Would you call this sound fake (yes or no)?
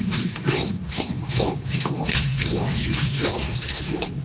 yes